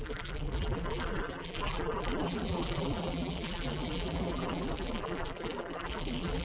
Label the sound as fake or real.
fake